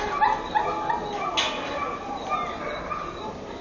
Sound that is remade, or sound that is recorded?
recorded